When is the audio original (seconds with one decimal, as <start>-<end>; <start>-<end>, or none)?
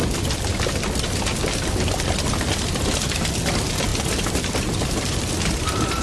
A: 0.0-6.0